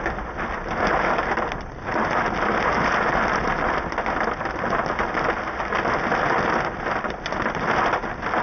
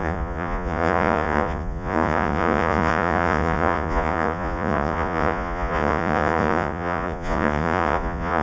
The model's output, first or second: second